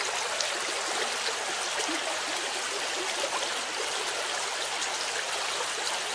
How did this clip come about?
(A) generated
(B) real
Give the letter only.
B